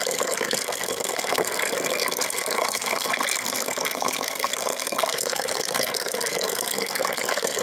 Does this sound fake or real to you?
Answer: fake